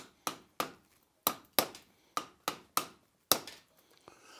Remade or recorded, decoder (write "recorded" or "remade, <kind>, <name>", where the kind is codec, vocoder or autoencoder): recorded